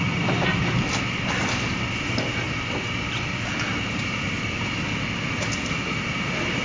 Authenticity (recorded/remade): recorded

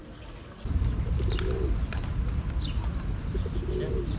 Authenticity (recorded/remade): recorded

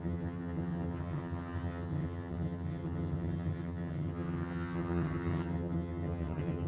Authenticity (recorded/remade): remade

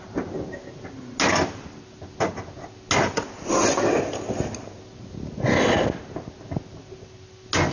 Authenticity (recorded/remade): recorded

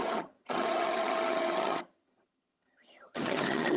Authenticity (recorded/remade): remade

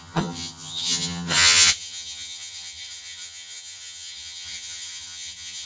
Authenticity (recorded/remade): remade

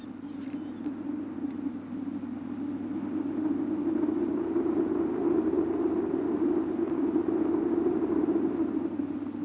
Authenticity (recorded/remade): recorded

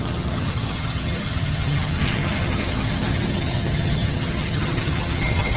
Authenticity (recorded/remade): remade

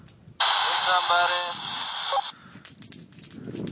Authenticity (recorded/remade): recorded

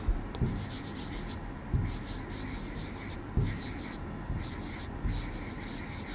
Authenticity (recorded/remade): recorded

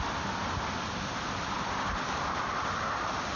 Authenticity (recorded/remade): recorded